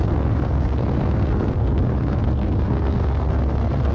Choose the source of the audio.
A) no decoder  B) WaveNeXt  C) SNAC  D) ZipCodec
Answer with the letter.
C